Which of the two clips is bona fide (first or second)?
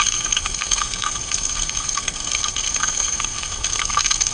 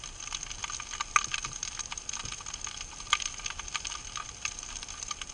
second